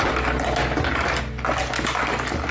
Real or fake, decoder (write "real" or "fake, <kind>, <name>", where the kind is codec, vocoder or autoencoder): real